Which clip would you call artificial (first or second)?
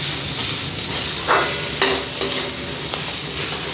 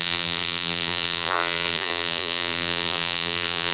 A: second